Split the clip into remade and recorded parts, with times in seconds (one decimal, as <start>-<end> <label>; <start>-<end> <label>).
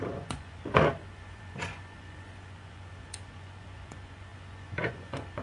0.0-5.4 remade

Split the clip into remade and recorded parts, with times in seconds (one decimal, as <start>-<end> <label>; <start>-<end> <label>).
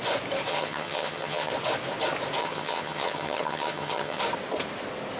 0.0-0.5 recorded; 0.5-1.5 remade; 1.5-2.4 recorded; 2.4-4.2 remade; 4.2-5.2 recorded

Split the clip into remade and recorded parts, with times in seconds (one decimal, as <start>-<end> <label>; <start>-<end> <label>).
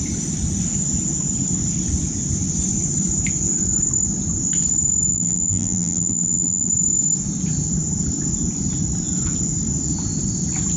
0.0-5.1 recorded; 5.1-6.7 remade; 6.7-10.8 recorded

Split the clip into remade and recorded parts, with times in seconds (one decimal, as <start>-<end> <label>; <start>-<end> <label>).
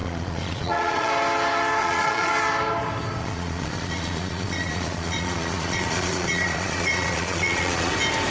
0.0-1.1 remade; 1.1-1.8 recorded; 1.8-2.3 remade; 2.3-3.2 recorded; 3.2-7.9 remade; 7.9-8.3 recorded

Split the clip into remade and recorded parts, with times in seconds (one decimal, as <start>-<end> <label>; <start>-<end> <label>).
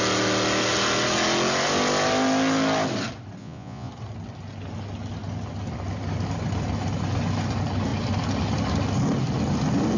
0.0-3.4 recorded; 3.4-3.9 remade; 3.9-10.0 recorded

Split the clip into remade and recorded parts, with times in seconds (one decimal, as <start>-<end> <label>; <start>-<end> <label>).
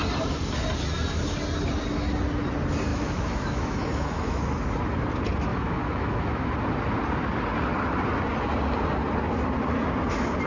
0.0-2.9 recorded; 2.9-4.4 remade; 4.4-5.5 recorded; 5.5-6.5 remade; 6.5-10.5 recorded